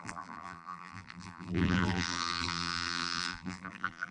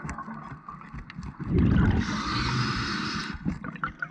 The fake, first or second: first